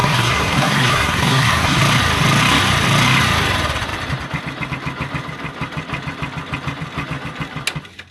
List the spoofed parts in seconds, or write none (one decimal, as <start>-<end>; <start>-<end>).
0.0-1.8